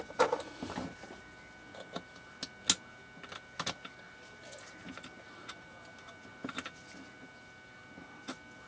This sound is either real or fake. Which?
real